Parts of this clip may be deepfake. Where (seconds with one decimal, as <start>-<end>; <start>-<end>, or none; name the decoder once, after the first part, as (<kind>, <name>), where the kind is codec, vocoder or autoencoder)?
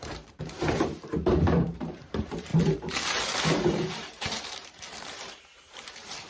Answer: 0.0-6.3 (vocoder, BigVGAN v2)